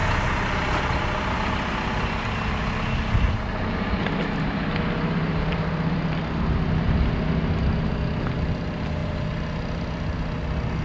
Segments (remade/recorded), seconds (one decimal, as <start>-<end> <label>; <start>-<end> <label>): 0.0-10.8 recorded